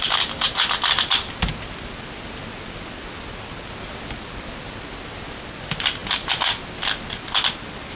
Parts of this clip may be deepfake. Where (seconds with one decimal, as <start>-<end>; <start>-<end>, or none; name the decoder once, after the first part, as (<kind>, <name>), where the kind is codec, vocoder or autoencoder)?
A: none